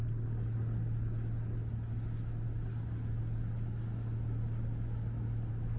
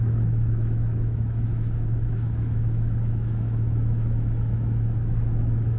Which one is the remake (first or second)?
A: second